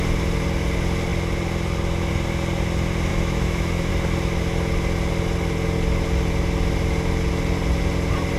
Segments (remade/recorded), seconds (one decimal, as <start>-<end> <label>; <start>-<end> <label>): 0.0-3.1 recorded; 3.1-3.9 remade; 3.9-8.4 recorded